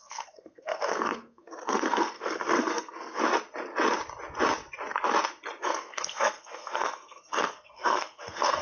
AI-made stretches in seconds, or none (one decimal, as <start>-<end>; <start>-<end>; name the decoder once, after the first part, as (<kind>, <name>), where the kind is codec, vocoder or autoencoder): 0.0-3.2 (codec, SNAC); 5.6-8.6